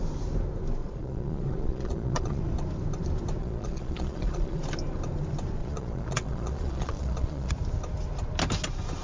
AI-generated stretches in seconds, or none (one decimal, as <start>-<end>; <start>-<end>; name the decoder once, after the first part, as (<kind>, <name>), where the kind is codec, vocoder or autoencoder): 0.8-2.4 (vocoder, Vocos); 3.4-4.6; 5.6-7.5